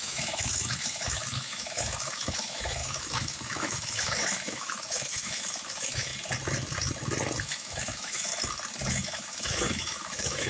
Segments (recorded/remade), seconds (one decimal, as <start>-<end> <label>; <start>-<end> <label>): 0.0-6.1 remade; 6.1-7.4 recorded; 7.4-8.3 remade; 8.3-8.9 recorded; 8.9-10.5 remade

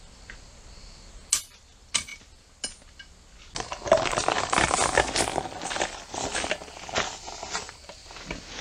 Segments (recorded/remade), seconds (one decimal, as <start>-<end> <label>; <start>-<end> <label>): 0.0-8.6 recorded